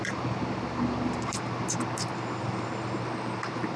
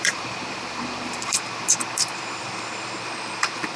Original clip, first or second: first